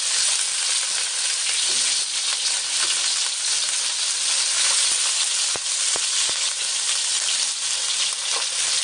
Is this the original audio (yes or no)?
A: yes